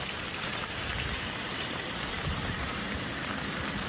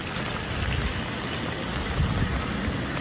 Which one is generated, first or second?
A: first